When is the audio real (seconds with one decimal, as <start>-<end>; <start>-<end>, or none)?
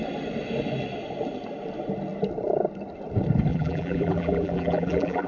0.0-3.5